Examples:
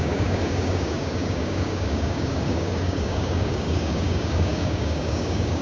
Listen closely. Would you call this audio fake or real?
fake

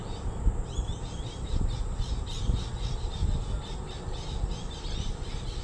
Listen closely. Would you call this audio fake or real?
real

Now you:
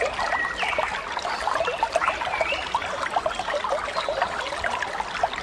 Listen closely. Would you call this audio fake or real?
real